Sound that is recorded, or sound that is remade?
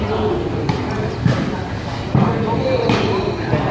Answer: recorded